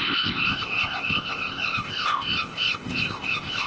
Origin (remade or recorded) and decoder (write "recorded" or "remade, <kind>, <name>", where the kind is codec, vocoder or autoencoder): remade, codec, ZipCodec